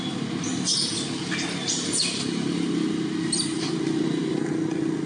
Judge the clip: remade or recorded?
recorded